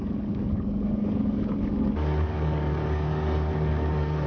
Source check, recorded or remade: remade